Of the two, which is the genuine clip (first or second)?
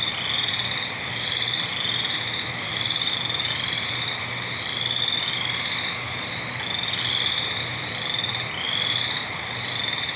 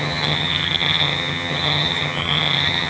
first